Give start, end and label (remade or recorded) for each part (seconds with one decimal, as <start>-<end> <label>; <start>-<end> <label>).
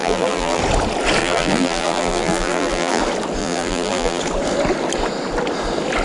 0.0-0.6 remade; 0.6-1.2 recorded; 1.2-3.0 remade; 3.0-3.4 recorded; 3.4-4.2 remade; 4.2-6.0 recorded